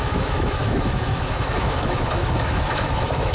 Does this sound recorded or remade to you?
remade